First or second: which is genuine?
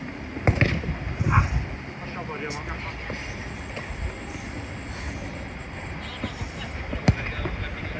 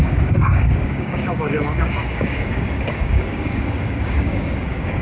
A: first